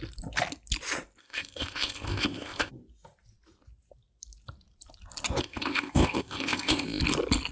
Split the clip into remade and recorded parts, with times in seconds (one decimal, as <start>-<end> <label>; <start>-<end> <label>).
0.0-1.2 recorded; 1.2-2.7 remade; 2.7-5.4 recorded; 5.4-7.0 remade; 7.0-7.5 recorded